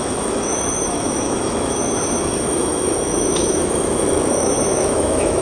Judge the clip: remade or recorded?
remade